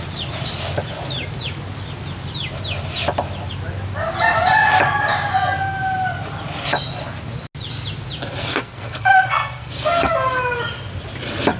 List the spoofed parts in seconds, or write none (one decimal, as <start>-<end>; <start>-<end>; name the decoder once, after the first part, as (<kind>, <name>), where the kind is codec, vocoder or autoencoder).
8.4-10.1 (codec, SNAC)

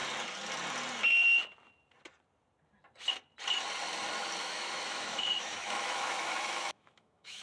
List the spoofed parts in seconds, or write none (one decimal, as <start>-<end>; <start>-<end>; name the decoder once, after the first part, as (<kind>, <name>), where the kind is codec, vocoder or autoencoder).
4.4-7.4 (autoencoder, DAC-VAE)